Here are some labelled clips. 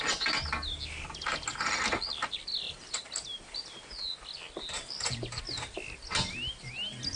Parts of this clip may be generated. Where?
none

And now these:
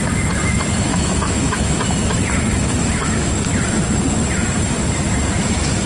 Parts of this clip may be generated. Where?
0.9-1.8 (autoencoder, DAC-VAE); 2.5-3.3

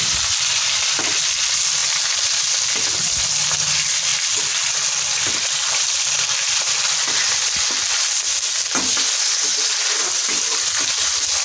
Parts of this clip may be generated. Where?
none

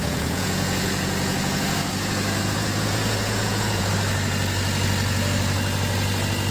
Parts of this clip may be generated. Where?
0.0-3.9 (vocoder, Vocos)

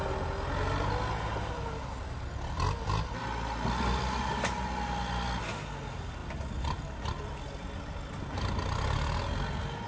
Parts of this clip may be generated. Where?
none

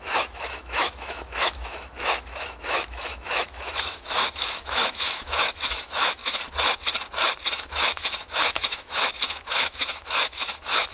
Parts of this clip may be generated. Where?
0.0-6.2 (autoencoder, DAC-VAE); 7.5-10.9

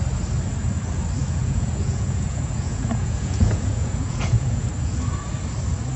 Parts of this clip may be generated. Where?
1.2-4.7 (vocoder, Vocos)

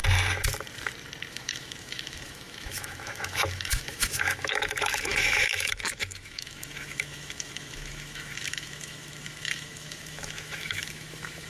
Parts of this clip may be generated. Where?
1.3-11.5 (autoencoder, DAC-VAE)